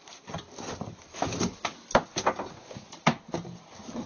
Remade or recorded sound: recorded